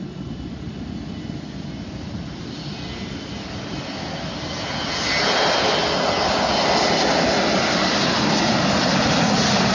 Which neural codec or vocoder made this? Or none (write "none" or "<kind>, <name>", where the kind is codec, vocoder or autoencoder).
none